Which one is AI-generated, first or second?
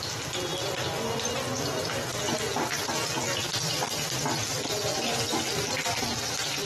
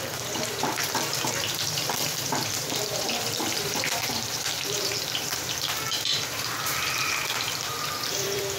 second